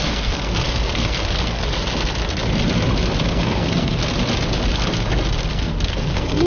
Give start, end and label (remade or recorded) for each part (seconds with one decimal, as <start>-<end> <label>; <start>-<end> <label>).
0.0-1.6 remade; 1.6-3.3 recorded; 3.3-4.0 remade; 4.0-5.5 recorded; 5.5-6.5 remade